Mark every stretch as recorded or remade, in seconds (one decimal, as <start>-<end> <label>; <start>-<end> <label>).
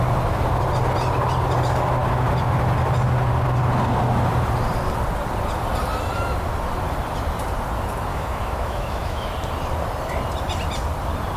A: 0.0-8.1 recorded; 8.1-9.3 remade; 9.3-11.4 recorded